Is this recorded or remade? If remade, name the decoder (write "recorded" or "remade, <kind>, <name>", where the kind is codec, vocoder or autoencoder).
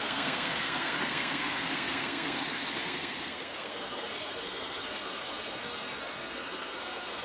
remade, codec, SNAC